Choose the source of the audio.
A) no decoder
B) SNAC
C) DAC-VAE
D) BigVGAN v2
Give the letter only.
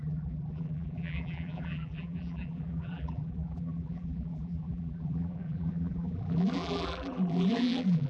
D